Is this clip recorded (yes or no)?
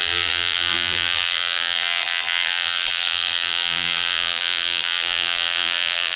no